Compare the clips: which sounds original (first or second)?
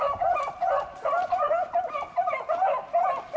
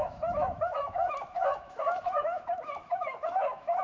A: first